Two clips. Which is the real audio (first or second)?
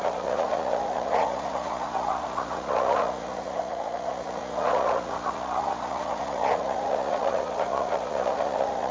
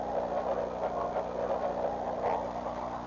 second